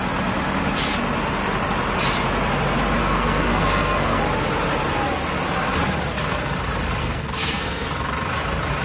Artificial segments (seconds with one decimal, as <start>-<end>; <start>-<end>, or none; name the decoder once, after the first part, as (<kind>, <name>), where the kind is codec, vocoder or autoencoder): 3.0-4.2 (codec, SNAC); 7.0-7.9